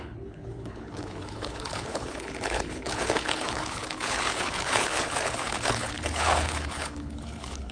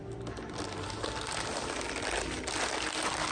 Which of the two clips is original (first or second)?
second